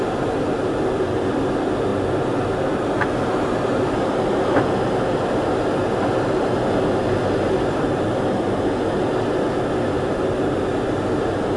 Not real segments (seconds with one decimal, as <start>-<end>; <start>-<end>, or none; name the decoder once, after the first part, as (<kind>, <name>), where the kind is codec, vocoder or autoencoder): none